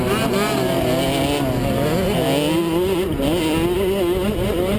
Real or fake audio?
real